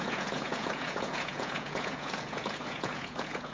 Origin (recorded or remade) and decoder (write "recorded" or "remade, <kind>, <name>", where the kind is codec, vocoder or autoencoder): remade, vocoder, Vocos